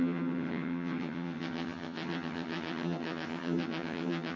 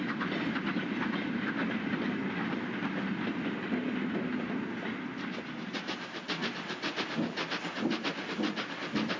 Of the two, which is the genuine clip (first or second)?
second